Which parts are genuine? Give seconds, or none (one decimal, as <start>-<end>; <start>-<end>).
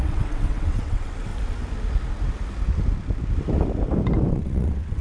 1.3-4.3